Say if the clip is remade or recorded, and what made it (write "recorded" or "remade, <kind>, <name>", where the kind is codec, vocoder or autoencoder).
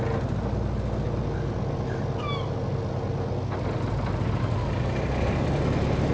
recorded